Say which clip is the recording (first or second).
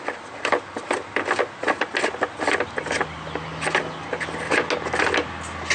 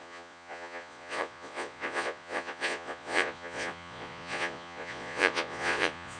first